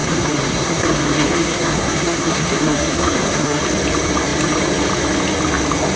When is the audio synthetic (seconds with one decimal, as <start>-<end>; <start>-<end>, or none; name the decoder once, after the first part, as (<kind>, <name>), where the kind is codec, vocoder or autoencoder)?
0.0-3.6 (codec, SNAC)